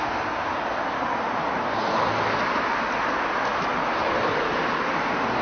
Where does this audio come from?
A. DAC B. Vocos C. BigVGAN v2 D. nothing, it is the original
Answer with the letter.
D